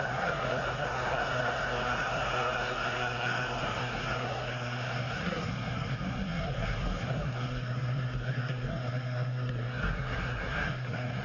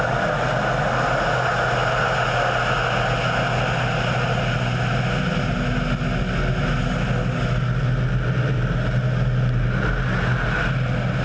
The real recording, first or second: second